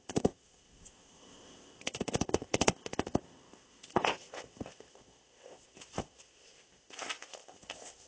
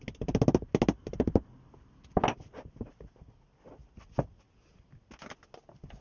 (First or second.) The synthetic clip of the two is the first